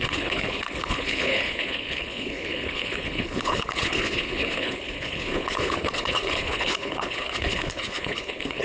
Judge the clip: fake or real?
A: fake